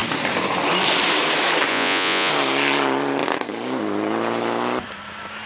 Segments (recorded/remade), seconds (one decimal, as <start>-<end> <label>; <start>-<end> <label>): 0.0-1.7 recorded; 1.7-2.3 remade; 2.3-5.5 recorded

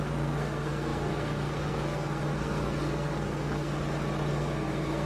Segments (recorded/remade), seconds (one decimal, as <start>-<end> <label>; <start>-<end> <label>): 0.0-3.7 remade; 3.7-4.3 recorded; 4.3-5.1 remade

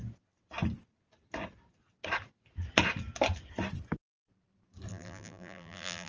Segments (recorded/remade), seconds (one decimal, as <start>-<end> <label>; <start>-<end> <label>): 0.0-4.9 recorded; 4.9-6.1 remade

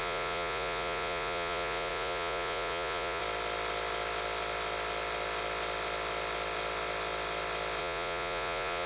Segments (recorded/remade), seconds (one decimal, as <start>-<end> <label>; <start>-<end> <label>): 0.0-3.2 remade; 3.2-7.8 recorded; 7.8-8.9 remade

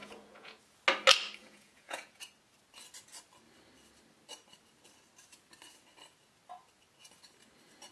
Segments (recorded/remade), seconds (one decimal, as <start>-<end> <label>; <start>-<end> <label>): 0.0-0.6 remade; 0.6-1.4 recorded; 1.4-2.3 remade; 2.3-7.9 recorded

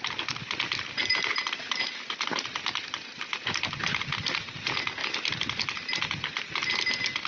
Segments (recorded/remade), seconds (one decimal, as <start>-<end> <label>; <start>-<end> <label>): 0.0-7.3 recorded

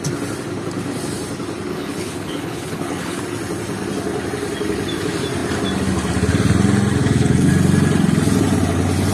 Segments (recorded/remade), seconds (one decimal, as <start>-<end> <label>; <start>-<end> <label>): 0.0-1.7 recorded; 1.7-3.2 remade; 3.2-7.0 recorded; 7.0-7.5 remade; 7.5-9.1 recorded

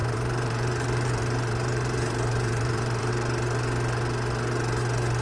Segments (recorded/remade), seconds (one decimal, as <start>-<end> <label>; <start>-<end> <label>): 0.0-3.1 remade; 3.1-5.2 recorded